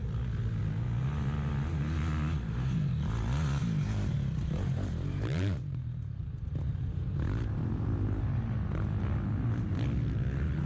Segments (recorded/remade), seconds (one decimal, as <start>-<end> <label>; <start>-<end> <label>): 0.0-3.6 recorded; 3.6-8.4 remade; 8.4-10.7 recorded